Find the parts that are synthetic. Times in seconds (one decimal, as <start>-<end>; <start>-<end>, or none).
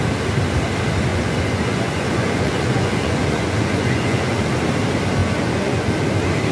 1.1-4.4; 5.2-5.9